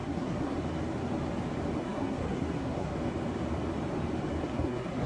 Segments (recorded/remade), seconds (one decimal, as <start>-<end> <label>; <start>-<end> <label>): 0.0-0.6 remade; 0.6-1.8 recorded; 1.8-2.9 remade; 2.9-4.4 recorded; 4.4-5.1 remade